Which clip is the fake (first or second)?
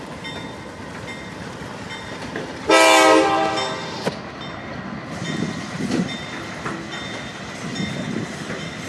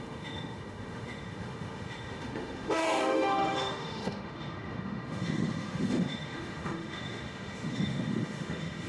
second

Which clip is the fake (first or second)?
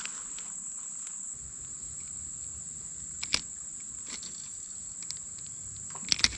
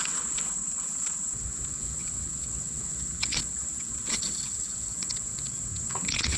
second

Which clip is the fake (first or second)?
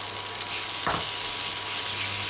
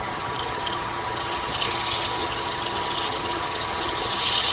second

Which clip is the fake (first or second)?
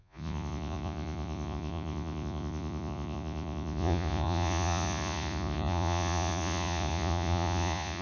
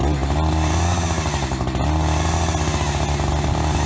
first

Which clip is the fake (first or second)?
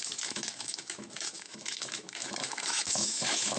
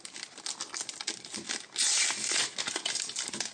first